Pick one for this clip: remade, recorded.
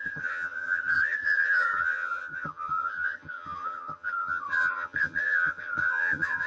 remade